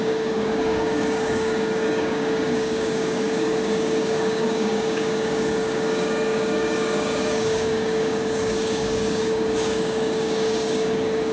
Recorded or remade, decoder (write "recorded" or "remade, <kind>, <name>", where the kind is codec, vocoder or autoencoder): remade, codec, DAC